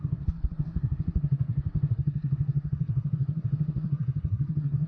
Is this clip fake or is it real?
fake